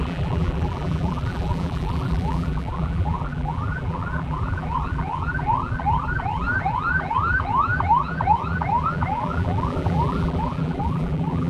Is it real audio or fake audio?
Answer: fake